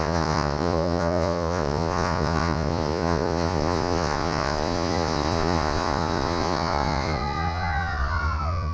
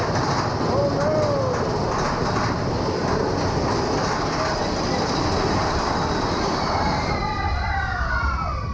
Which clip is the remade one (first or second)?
first